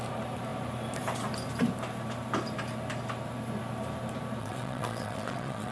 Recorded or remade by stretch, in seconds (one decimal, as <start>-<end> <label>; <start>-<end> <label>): 0.0-4.4 recorded; 4.4-5.7 remade